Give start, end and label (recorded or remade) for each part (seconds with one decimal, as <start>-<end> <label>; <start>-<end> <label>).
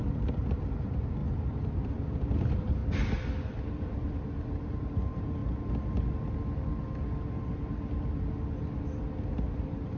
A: 0.0-1.2 remade; 1.2-2.1 recorded; 2.1-2.8 remade; 2.8-3.7 recorded; 3.7-5.4 remade; 5.4-9.2 recorded; 9.2-10.0 remade